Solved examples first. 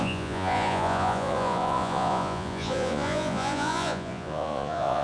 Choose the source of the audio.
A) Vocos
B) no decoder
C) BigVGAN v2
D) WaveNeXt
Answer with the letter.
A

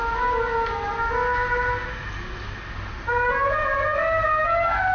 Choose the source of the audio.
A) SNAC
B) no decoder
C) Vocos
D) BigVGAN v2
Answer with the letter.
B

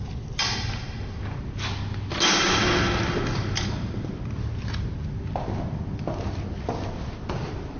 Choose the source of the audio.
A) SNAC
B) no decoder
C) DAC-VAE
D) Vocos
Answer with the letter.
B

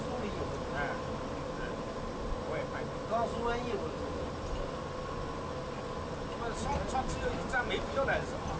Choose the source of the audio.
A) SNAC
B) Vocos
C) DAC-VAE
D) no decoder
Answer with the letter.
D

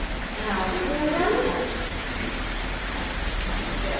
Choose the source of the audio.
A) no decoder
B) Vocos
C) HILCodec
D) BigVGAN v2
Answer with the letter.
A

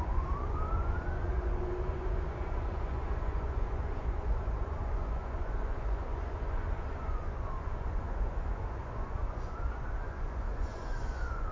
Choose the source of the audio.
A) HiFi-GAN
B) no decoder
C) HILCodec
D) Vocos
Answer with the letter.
D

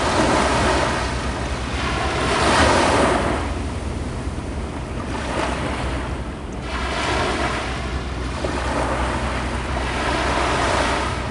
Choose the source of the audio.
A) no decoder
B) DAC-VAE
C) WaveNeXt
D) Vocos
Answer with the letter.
A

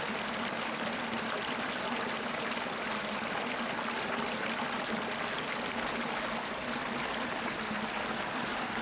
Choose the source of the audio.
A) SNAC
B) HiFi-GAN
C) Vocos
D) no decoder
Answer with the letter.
D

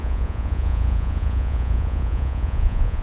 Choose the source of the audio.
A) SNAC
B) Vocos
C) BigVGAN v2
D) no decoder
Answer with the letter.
B